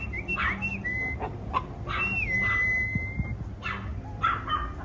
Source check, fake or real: real